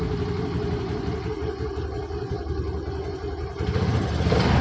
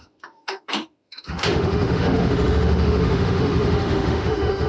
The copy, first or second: second